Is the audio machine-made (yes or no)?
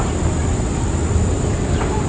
no